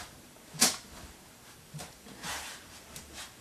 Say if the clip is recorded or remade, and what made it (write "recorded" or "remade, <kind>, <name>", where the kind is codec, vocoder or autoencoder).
remade, vocoder, BigVGAN v2